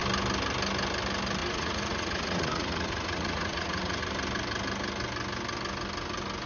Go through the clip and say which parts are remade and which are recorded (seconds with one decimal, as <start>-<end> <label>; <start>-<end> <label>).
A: 0.0-1.4 recorded; 1.4-4.0 remade; 4.0-6.5 recorded